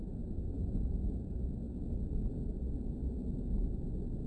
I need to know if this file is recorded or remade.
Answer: recorded